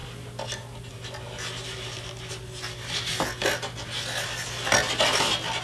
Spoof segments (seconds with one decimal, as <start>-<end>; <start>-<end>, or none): none